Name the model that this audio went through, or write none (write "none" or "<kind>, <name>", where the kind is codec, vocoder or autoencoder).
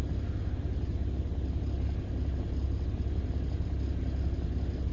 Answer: none